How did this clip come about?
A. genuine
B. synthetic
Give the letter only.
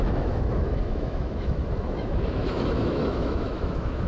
B